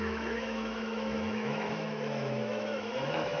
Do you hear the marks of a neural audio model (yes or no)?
yes